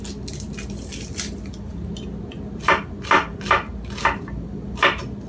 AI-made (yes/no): no